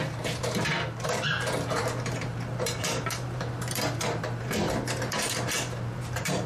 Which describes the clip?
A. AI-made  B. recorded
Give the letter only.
A